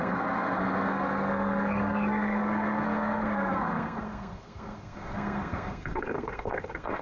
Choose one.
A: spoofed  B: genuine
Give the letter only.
A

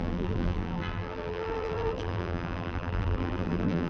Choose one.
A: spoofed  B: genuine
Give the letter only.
A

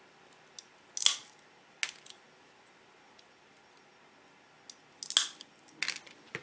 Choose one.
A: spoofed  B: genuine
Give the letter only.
B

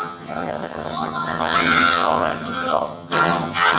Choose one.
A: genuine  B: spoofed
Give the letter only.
B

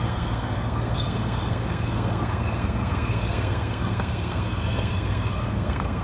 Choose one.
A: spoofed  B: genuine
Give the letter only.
A